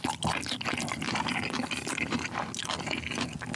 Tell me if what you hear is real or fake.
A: real